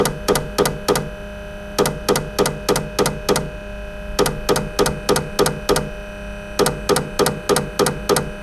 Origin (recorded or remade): recorded